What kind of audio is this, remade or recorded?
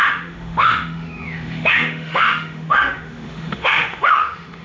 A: remade